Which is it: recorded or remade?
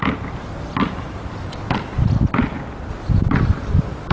remade